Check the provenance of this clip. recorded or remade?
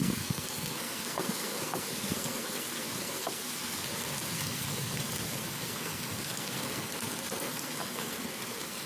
remade